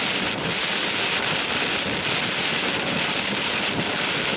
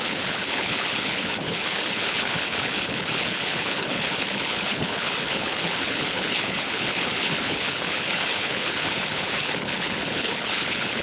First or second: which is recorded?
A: first